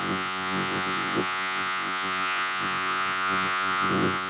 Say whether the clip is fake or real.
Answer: fake